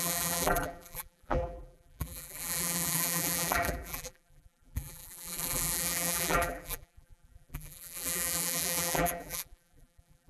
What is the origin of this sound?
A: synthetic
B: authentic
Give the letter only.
A